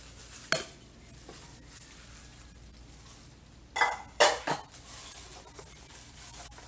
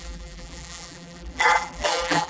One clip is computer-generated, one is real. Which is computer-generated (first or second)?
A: second